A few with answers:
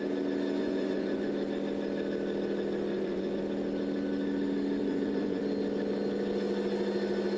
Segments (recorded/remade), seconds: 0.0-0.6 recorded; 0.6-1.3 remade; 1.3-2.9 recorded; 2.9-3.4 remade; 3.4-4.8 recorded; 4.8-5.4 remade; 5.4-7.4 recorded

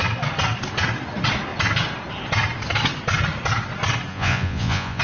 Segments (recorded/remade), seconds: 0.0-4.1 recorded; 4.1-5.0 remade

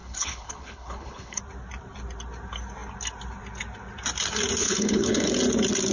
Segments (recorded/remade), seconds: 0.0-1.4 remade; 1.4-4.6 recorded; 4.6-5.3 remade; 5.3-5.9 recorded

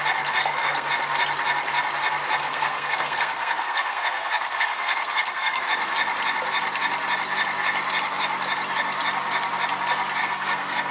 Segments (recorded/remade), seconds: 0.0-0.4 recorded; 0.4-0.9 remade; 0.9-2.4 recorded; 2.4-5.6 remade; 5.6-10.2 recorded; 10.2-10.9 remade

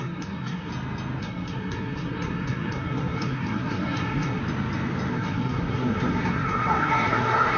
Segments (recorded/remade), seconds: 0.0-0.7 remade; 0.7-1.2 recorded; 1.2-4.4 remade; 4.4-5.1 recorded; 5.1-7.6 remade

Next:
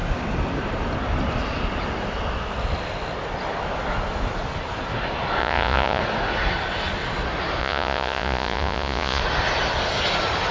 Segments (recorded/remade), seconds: 0.0-5.4 recorded; 5.4-6.0 remade; 6.0-7.6 recorded; 7.6-9.2 remade; 9.2-10.5 recorded

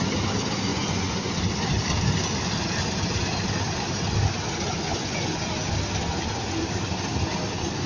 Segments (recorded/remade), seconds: 0.0-0.7 recorded; 0.7-1.4 remade; 1.4-4.7 recorded; 4.7-5.5 remade; 5.5-7.9 recorded